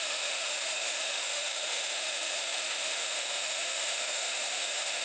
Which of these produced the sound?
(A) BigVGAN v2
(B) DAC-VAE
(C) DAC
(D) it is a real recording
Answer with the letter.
B